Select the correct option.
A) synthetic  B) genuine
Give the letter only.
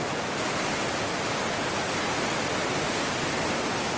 B